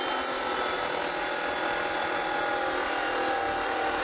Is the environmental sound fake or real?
real